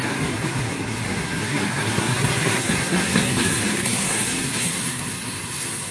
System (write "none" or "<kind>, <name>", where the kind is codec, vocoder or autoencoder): codec, SNAC